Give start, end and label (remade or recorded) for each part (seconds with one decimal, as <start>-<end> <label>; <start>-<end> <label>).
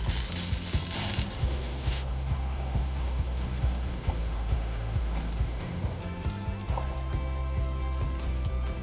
0.0-1.4 recorded; 1.4-6.0 remade; 6.0-8.8 recorded